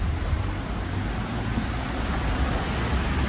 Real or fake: real